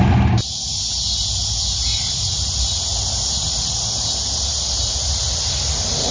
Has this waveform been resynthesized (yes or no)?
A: no